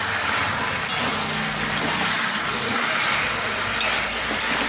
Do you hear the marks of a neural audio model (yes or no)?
no